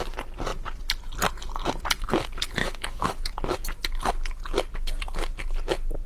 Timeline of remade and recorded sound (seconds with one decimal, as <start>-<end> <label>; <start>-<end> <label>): 0.0-2.6 recorded; 2.6-3.3 remade; 3.3-6.1 recorded